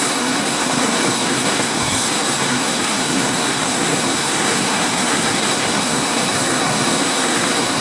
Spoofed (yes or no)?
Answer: yes